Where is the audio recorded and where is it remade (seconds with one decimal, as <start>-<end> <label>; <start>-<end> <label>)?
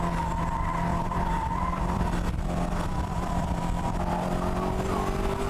0.0-0.9 recorded; 0.9-3.9 remade; 3.9-5.5 recorded